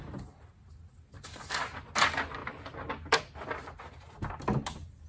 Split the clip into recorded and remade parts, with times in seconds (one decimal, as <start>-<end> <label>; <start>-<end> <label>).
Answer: 0.0-5.1 recorded